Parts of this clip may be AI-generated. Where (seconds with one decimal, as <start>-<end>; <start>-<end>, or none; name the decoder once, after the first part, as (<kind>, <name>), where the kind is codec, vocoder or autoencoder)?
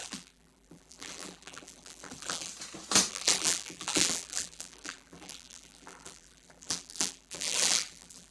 0.0-2.5 (vocoder, BigVGAN v2); 3.1-8.3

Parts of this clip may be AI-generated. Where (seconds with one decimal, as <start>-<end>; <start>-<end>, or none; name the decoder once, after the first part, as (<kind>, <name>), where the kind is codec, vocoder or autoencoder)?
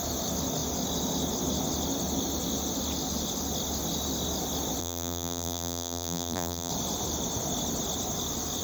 4.8-6.7 (vocoder, BigVGAN v2)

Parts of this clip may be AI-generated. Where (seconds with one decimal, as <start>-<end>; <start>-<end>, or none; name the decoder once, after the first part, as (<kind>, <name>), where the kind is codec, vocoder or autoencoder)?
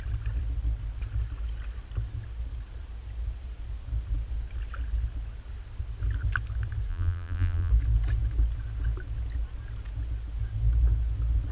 6.9-7.7 (vocoder, BigVGAN v2)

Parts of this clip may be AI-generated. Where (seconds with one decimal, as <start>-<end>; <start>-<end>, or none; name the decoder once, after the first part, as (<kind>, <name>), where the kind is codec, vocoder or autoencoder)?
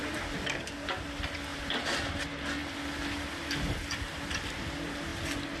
1.5-2.0 (vocoder, BigVGAN v2)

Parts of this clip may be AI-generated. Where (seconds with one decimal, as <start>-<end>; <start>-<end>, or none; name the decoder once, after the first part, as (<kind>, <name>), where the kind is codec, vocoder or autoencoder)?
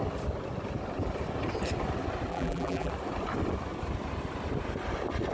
2.3-2.9 (vocoder, BigVGAN v2)